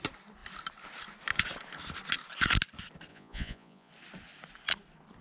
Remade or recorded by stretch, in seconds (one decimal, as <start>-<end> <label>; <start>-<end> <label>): 0.0-3.1 recorded; 3.1-3.9 remade; 3.9-5.2 recorded